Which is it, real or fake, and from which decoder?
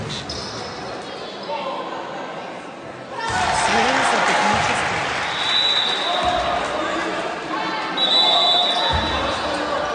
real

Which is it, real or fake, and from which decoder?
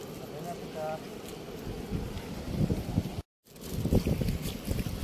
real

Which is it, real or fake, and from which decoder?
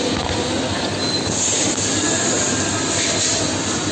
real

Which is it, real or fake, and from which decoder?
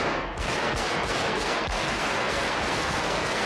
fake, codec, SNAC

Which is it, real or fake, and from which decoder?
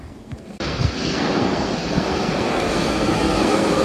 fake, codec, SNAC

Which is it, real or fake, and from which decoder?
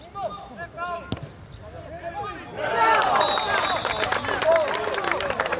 real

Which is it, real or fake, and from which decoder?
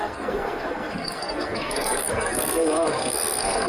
fake, codec, SNAC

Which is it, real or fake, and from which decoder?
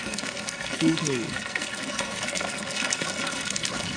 fake, codec, SNAC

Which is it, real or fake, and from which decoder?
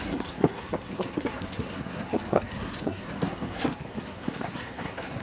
fake, codec, SNAC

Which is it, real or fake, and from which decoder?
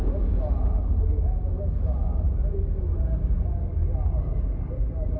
real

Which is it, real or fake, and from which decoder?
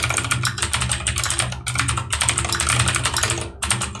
real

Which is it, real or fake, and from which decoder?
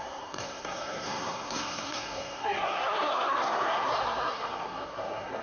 fake, codec, SNAC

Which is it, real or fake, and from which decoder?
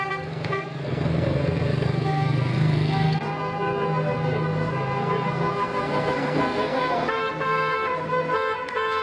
fake, codec, SNAC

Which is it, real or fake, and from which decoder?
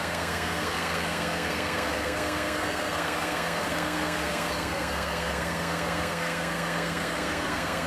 fake, codec, SNAC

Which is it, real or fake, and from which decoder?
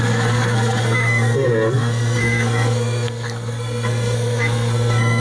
fake, codec, SNAC